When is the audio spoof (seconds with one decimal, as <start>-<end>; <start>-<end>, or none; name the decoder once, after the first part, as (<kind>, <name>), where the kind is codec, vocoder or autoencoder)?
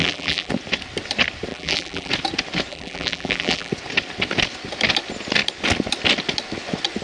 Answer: 0.0-0.5 (vocoder, BigVGAN v2); 1.5-2.1; 2.7-3.7